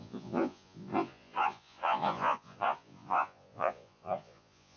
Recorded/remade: remade